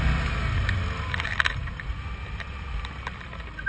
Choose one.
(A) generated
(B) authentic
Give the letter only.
B